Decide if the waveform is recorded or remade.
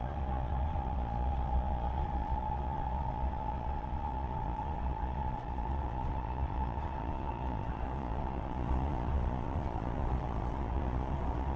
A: remade